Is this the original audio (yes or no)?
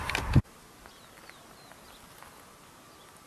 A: yes